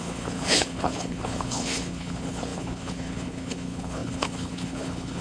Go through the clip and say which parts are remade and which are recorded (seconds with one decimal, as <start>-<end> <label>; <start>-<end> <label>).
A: 0.0-5.2 remade